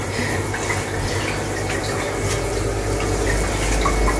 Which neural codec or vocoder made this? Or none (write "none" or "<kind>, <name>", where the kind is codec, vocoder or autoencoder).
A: none